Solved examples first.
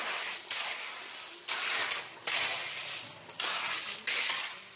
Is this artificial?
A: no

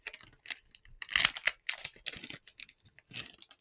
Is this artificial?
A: no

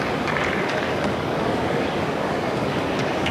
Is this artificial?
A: yes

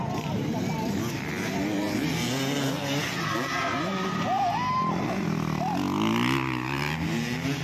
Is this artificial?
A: no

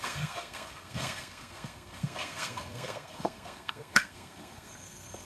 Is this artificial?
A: yes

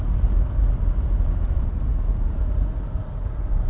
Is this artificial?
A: no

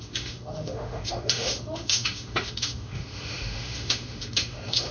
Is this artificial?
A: yes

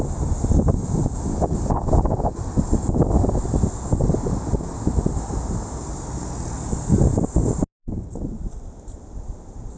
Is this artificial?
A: no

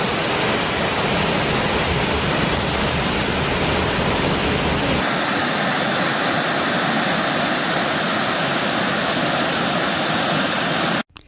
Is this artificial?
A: no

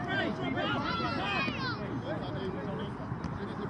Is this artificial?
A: no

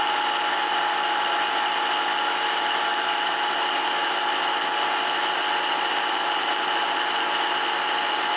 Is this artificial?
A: no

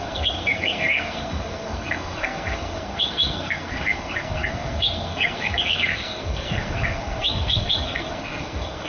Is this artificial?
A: yes